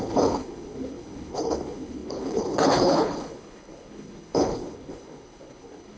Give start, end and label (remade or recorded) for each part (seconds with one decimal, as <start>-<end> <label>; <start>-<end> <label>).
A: 0.0-6.0 remade